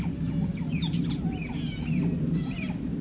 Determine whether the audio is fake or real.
real